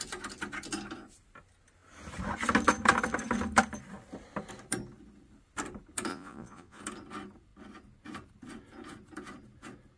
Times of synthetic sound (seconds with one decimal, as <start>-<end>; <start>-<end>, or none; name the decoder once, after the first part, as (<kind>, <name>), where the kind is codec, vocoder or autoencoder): 6.1-6.8 (vocoder, Vocos)